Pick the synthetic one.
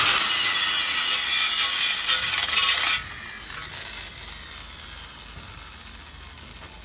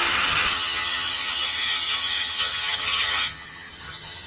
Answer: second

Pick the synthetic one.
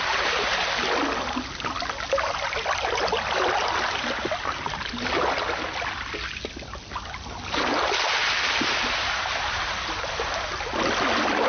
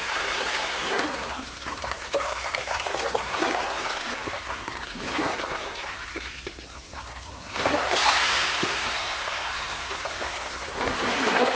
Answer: second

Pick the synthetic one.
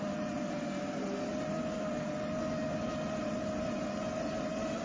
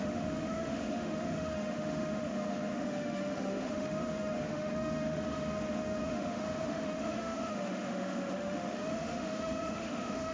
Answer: second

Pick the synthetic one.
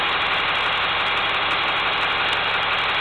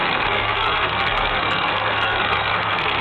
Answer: second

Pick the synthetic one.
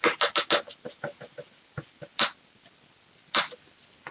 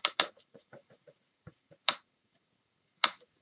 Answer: second